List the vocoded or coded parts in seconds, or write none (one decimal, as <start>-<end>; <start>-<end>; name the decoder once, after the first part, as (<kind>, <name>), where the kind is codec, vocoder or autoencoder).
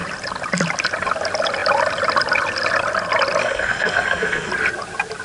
3.4-4.5 (codec, SNAC)